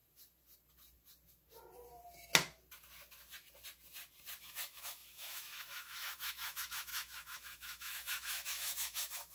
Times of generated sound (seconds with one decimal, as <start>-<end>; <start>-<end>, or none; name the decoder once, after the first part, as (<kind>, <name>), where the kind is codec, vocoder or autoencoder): 4.4-9.3 (autoencoder, DAC-VAE)